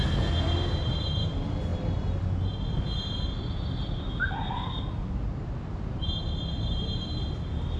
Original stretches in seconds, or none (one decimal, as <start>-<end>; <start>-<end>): 0.0-7.8